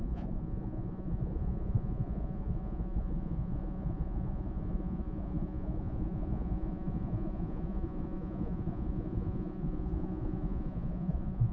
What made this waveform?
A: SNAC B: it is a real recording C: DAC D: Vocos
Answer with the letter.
D